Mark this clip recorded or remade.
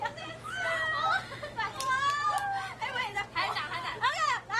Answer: recorded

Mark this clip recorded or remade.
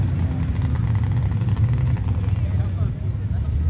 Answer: recorded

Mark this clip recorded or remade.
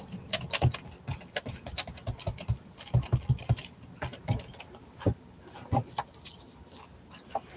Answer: recorded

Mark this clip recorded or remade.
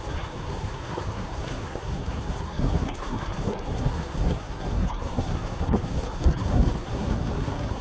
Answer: remade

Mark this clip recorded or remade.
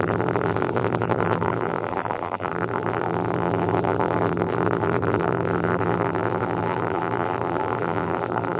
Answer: remade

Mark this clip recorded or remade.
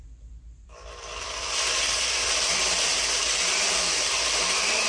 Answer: remade